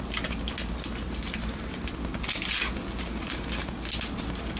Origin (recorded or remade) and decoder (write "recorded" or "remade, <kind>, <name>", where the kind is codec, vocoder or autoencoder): recorded